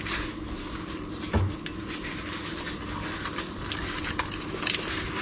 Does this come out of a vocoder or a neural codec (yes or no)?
no